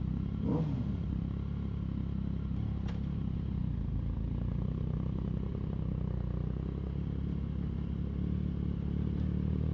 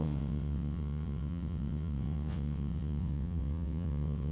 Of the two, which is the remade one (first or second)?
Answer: second